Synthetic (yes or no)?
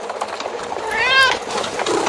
no